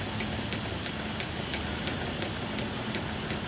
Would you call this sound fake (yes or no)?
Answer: no